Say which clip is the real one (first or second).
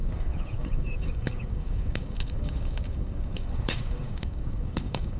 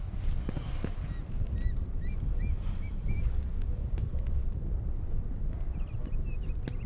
second